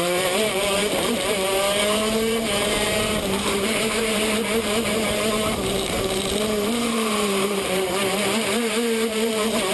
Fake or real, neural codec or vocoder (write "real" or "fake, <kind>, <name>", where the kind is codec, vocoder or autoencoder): fake, vocoder, BigVGAN v2